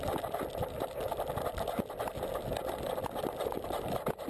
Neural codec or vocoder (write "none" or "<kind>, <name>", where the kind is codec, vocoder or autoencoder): none